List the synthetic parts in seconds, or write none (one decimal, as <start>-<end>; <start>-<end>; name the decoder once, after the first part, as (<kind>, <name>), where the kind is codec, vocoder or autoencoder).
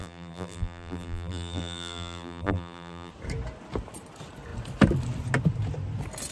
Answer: 0.0-3.1 (vocoder, BigVGAN v2)